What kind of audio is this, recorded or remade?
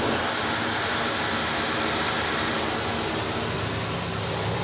recorded